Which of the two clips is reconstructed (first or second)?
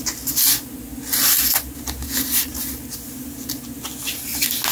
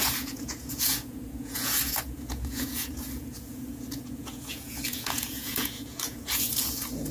second